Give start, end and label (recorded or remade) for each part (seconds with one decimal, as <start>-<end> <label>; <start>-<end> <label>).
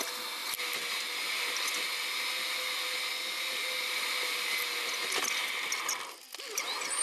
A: 0.0-7.0 recorded